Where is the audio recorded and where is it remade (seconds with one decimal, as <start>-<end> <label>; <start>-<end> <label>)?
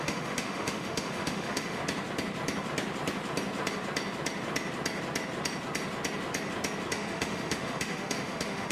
0.0-1.8 remade; 1.8-6.9 recorded; 6.9-8.7 remade